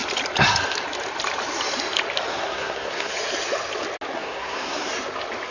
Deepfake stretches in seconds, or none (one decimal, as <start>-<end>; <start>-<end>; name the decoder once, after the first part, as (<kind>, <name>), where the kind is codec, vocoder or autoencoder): 2.3-3.1 (codec, SNAC); 4.1-4.9